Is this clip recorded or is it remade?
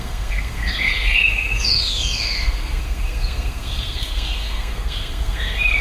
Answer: remade